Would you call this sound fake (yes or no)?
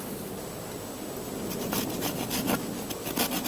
no